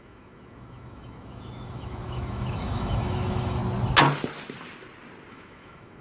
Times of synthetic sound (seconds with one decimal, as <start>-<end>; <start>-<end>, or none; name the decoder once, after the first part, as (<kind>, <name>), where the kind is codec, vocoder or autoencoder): 0.0-3.6 (autoencoder, DAC-VAE); 5.3-6.0